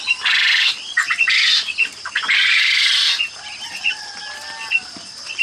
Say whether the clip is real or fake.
real